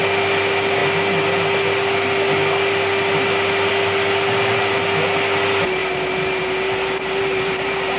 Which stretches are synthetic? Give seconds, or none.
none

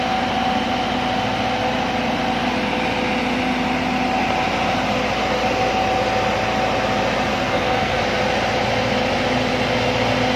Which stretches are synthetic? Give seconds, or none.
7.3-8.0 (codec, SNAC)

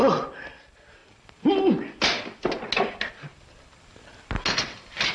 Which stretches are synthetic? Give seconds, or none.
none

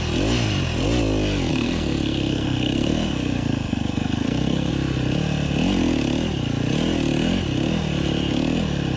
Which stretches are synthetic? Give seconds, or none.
1.5-4.7 (codec, SNAC)

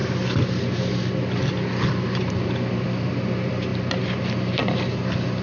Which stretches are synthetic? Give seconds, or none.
none

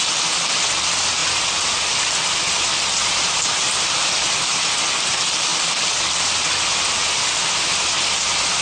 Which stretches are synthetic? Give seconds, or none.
none